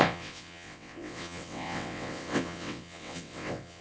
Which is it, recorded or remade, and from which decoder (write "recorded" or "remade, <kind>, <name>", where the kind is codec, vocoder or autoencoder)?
remade, vocoder, WaveNeXt